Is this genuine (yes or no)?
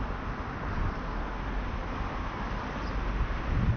yes